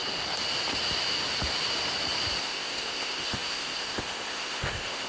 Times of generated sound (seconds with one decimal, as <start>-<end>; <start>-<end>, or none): 2.4-5.1